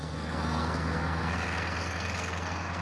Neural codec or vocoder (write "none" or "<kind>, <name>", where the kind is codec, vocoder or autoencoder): codec, SNAC